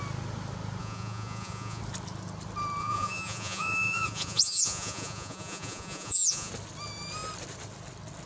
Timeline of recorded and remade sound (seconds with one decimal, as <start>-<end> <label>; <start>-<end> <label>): 0.0-0.8 recorded; 0.8-1.8 remade; 1.8-2.8 recorded; 2.8-6.5 remade; 6.5-8.3 recorded